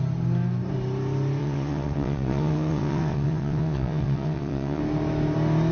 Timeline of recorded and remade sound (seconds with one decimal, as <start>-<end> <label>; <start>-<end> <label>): 0.0-1.4 recorded; 1.4-4.8 remade; 4.8-5.7 recorded